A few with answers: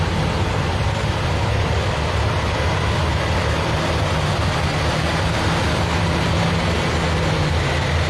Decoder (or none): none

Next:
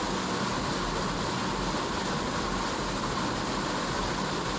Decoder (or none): none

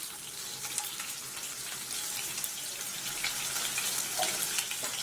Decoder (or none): none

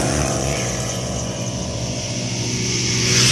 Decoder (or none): vocoder, Vocos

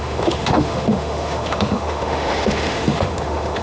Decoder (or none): autoencoder, DAC-VAE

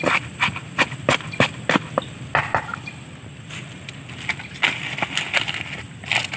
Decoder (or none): none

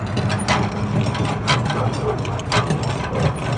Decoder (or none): none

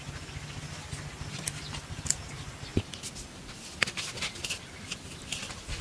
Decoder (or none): none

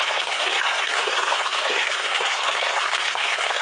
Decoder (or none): codec, SNAC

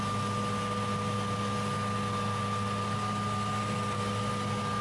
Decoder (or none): none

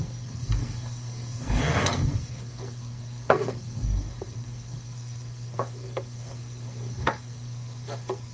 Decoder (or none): codec, SNAC